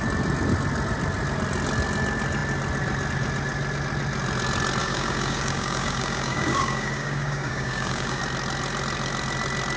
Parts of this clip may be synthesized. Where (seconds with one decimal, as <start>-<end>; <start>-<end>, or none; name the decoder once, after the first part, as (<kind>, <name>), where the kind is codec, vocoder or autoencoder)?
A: 4.8-8.2 (codec, DAC)